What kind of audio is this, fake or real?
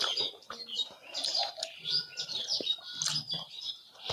real